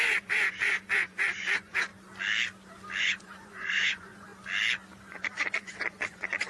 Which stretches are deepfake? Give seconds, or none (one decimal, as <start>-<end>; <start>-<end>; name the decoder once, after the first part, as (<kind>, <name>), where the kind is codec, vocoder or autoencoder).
0.0-1.9 (vocoder, Vocos); 3.0-4.3; 5.0-6.5